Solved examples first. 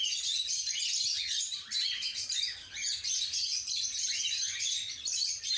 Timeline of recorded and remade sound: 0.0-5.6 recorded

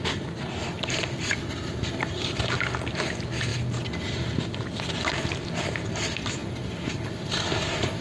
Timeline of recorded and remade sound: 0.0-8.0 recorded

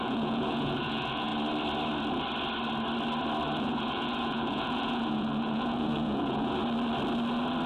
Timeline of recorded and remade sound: 0.0-1.3 remade; 1.3-3.6 recorded; 3.6-6.6 remade; 6.6-7.7 recorded

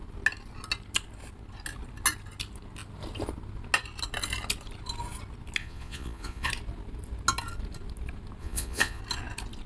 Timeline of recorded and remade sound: 0.0-5.6 recorded; 5.6-6.5 remade; 6.5-8.4 recorded; 8.4-9.0 remade; 9.0-9.7 recorded

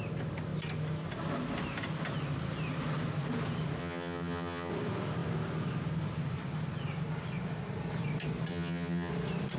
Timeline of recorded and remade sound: 0.0-3.8 recorded; 3.8-4.7 remade; 4.7-8.5 recorded; 8.5-9.1 remade; 9.1-9.6 recorded

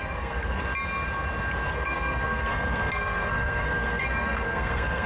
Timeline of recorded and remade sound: 0.0-0.6 remade; 0.6-1.7 recorded; 1.7-5.1 remade

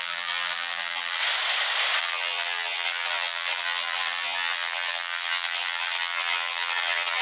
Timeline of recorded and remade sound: 0.0-1.2 remade; 1.2-2.0 recorded; 2.0-7.2 remade